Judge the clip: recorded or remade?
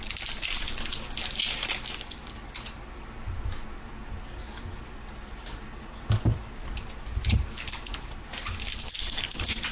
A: recorded